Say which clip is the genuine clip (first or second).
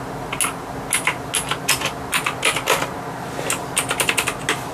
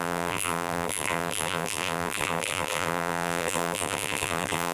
first